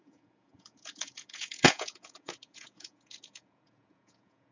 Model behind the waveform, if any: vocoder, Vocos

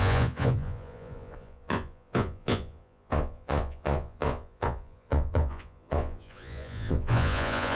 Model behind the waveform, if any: vocoder, Vocos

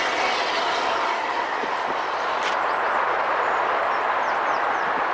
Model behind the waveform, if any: none